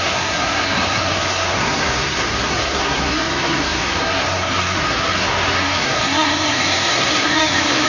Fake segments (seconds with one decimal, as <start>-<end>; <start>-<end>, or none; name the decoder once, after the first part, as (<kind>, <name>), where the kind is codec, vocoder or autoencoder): 0.0-7.9 (codec, SNAC)